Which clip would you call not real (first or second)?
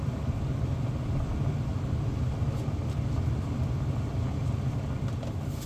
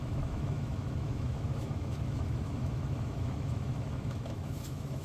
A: second